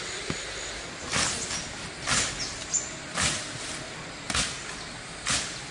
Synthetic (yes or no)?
no